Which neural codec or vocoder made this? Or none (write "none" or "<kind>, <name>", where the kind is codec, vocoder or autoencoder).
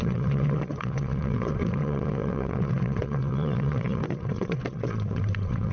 vocoder, WaveNeXt